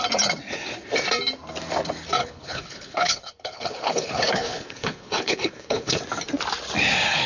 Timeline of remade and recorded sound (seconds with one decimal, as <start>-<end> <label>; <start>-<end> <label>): 0.0-2.2 recorded; 2.2-6.0 remade; 6.0-7.3 recorded